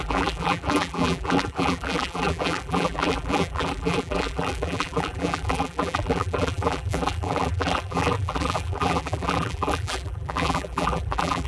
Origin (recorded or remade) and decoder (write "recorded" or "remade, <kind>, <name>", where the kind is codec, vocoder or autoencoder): remade, vocoder, BigVGAN v2